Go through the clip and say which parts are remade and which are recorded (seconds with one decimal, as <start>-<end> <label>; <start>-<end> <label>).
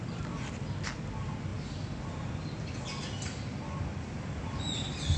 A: 0.0-5.2 recorded